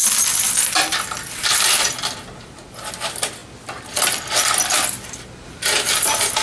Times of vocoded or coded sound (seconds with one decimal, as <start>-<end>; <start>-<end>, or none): none